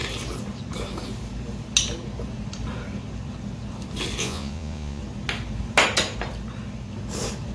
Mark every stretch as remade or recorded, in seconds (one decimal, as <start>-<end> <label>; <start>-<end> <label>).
0.0-4.2 recorded; 4.2-5.0 remade; 5.0-7.5 recorded